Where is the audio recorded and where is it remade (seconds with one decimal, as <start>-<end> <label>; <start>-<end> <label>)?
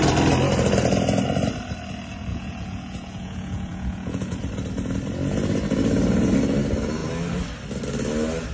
0.0-2.3 recorded; 2.3-4.4 remade; 4.4-8.5 recorded